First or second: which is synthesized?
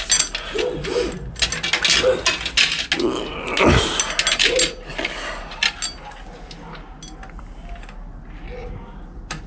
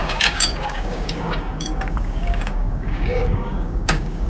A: second